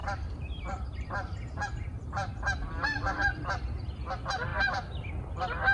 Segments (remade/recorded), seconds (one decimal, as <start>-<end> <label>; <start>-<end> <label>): 0.0-3.4 remade; 3.4-4.5 recorded; 4.5-5.1 remade; 5.1-5.7 recorded